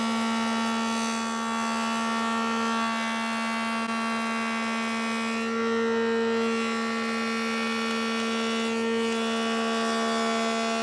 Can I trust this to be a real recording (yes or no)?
yes